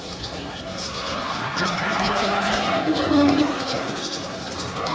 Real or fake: fake